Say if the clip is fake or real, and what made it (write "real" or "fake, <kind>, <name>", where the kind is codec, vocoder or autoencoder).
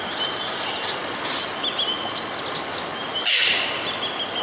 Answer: real